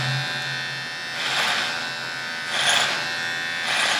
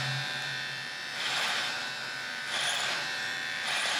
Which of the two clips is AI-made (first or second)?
second